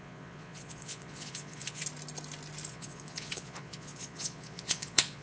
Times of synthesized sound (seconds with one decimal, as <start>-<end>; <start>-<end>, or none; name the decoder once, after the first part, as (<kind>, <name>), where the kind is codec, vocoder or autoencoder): 0.0-1.8 (vocoder, Vocos); 2.7-5.2